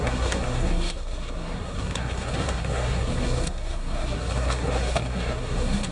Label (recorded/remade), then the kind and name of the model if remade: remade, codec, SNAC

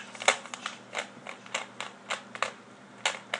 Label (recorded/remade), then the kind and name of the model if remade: recorded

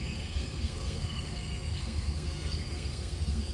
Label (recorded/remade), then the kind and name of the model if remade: remade, codec, SNAC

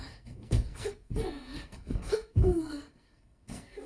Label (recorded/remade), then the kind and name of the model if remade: remade, codec, SNAC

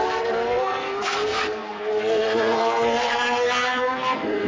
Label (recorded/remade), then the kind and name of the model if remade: remade, codec, SNAC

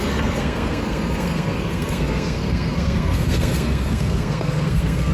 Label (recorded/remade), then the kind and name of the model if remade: remade, codec, SNAC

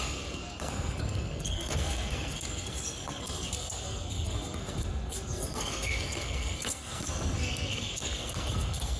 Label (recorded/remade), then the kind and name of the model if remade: remade, codec, SNAC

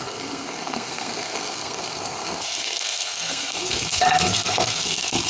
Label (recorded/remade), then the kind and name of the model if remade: remade, codec, SNAC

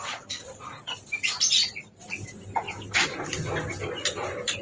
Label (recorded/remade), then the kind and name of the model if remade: recorded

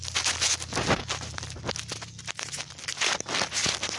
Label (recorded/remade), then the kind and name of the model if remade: recorded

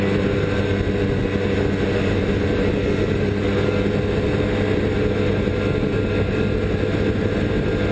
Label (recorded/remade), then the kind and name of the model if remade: recorded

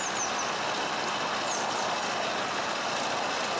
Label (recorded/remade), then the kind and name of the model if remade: recorded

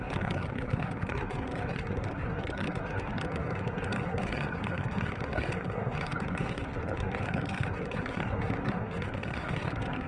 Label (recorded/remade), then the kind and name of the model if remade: remade, codec, SNAC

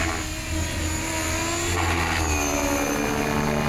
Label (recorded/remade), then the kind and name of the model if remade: recorded